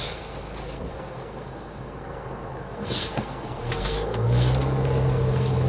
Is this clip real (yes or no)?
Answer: no